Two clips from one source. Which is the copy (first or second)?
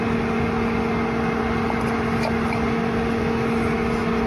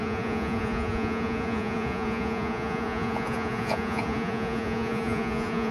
second